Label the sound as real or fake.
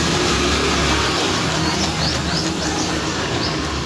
real